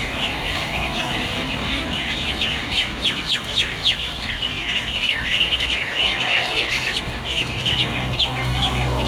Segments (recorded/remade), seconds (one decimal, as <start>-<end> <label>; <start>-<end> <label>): 0.0-9.1 remade